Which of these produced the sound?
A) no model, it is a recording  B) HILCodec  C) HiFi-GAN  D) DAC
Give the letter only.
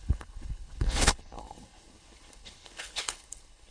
B